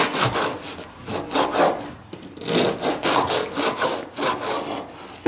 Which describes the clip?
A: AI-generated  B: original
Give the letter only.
B